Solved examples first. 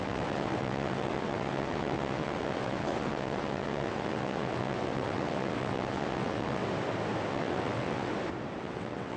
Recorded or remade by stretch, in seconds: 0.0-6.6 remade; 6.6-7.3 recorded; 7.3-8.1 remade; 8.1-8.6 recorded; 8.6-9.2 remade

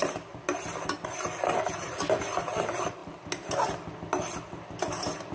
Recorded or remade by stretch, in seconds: 0.0-5.3 recorded

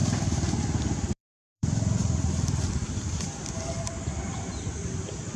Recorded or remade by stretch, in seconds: 0.0-3.2 remade; 3.2-5.4 recorded

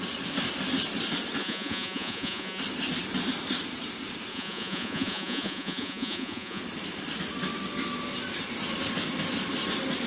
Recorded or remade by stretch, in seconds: 0.0-1.4 recorded; 1.4-2.6 remade; 2.6-4.3 recorded; 4.3-6.6 remade; 6.6-10.1 recorded

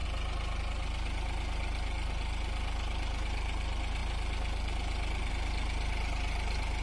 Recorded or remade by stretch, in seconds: 0.0-6.8 recorded

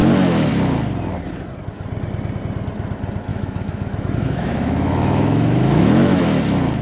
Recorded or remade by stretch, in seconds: 0.0-3.3 recorded; 3.3-6.2 remade; 6.2-6.8 recorded